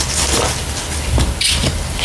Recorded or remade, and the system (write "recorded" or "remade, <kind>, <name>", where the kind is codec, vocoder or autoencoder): recorded